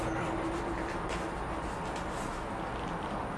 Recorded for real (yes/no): yes